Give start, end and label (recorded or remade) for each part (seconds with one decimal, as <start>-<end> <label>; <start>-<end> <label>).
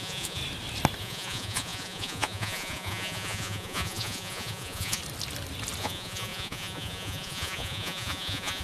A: 0.0-0.4 remade; 0.4-1.0 recorded; 1.0-5.0 remade; 5.0-5.8 recorded; 5.8-8.6 remade